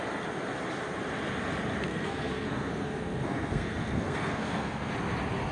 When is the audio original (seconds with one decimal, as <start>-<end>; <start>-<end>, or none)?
0.0-1.9; 4.9-5.5